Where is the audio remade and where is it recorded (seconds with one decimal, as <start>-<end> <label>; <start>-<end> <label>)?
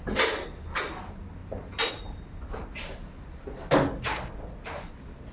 0.0-5.3 recorded